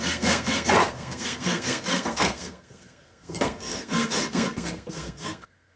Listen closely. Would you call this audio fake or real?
fake